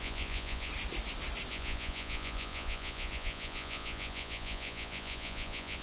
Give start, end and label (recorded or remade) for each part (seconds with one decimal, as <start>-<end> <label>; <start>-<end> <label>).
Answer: 0.0-0.7 remade; 0.7-1.5 recorded; 1.5-5.8 remade